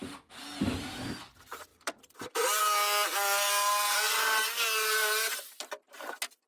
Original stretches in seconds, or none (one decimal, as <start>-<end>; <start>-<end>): 0.0-1.7; 2.6-6.5